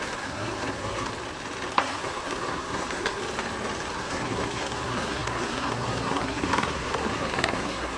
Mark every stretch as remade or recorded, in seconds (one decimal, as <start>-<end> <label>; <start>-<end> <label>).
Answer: 0.0-1.1 remade; 1.1-1.8 recorded; 1.8-3.2 remade; 3.2-3.9 recorded; 3.9-8.0 remade